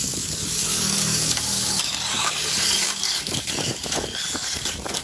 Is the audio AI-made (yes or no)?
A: yes